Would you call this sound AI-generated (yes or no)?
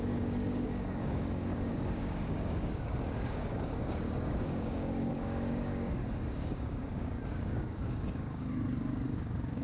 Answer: yes